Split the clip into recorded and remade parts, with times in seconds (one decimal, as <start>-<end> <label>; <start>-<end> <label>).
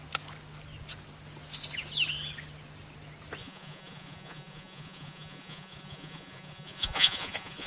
0.0-3.4 recorded; 3.4-7.7 remade